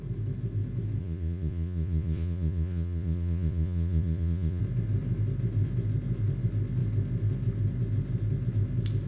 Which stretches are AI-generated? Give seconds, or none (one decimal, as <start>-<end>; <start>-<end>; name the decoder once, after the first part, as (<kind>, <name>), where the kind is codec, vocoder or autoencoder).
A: 1.0-4.6 (vocoder, Vocos)